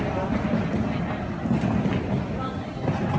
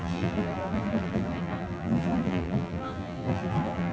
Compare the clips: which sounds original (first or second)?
first